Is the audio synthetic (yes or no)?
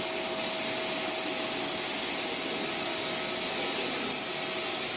no